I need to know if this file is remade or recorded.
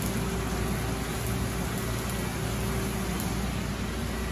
recorded